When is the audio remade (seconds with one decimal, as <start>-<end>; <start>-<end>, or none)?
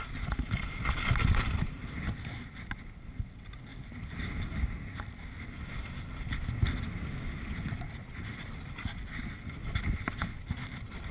none